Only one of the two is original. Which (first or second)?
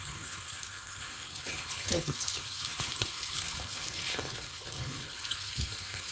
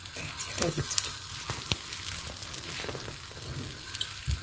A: second